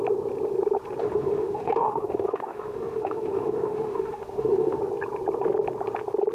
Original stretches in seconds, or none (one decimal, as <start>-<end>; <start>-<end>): 0.0-1.0; 4.8-6.3